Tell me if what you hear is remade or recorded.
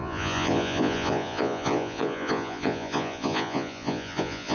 remade